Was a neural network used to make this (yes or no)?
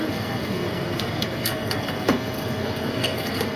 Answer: yes